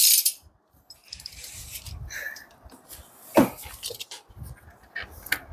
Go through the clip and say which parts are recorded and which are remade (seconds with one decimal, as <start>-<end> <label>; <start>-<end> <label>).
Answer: 0.0-1.0 recorded; 1.0-4.3 remade; 4.3-5.5 recorded